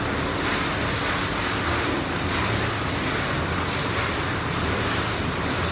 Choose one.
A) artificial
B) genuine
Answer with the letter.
B